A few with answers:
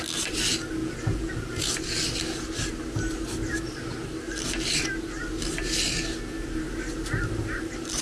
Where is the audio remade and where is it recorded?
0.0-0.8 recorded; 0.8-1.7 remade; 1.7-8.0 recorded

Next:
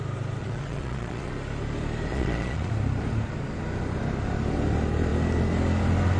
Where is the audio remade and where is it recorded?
0.0-0.4 recorded; 0.4-1.3 remade; 1.3-2.1 recorded; 2.1-2.7 remade; 2.7-6.2 recorded

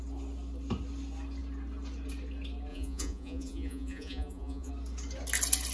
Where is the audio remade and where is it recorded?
0.0-2.7 recorded; 2.7-4.7 remade; 4.7-5.7 recorded